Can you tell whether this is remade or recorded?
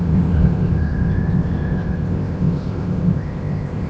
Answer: remade